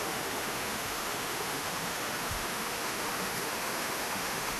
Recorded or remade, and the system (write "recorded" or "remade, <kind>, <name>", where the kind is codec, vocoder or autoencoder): remade, autoencoder, DAC-VAE